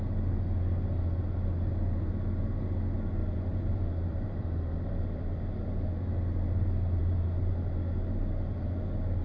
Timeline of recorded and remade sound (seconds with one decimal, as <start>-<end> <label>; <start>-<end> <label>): 0.0-3.2 recorded; 3.2-5.3 remade; 5.3-7.0 recorded; 7.0-7.5 remade; 7.5-9.2 recorded